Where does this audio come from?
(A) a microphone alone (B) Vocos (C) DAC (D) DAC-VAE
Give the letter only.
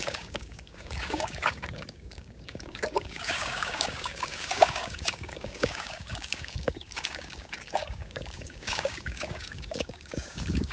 C